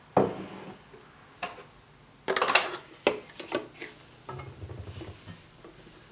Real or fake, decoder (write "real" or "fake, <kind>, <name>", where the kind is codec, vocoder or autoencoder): real